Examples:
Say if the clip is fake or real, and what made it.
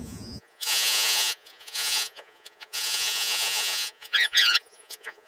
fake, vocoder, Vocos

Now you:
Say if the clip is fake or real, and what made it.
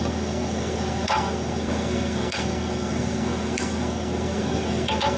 fake, codec, SNAC